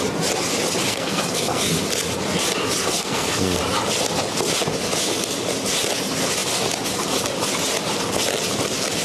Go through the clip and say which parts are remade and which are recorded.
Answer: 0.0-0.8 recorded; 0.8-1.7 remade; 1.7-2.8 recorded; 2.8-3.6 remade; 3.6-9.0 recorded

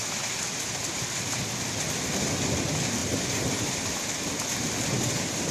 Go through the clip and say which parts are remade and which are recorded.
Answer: 0.0-0.7 remade; 0.7-3.0 recorded; 3.0-4.7 remade; 4.7-5.5 recorded